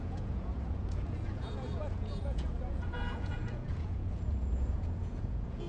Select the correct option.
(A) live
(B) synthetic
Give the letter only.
B